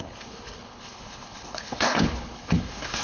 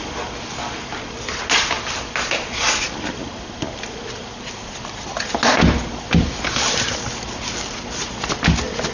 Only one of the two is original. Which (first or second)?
second